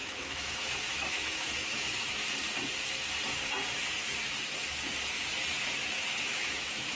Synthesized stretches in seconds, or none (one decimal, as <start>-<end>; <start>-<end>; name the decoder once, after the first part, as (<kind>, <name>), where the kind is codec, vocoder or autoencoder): 0.0-2.2 (autoencoder, DAC-VAE); 6.2-7.0